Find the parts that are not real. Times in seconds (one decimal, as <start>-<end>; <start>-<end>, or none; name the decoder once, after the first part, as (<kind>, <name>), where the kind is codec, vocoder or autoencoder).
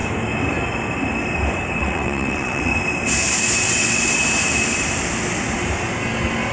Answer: 1.8-2.7 (vocoder, WaveNeXt); 3.6-4.2